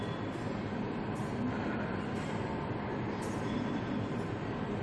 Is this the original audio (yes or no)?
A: yes